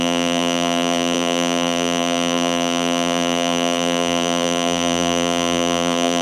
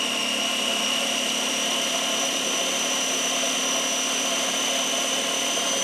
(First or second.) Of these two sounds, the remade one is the first